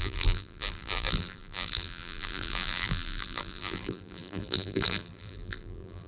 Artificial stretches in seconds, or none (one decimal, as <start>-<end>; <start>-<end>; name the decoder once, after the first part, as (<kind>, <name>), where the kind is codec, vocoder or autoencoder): 0.0-6.1 (vocoder, BigVGAN v2)